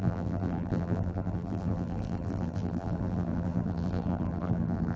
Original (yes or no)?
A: no